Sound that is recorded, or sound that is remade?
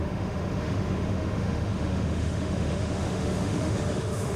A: remade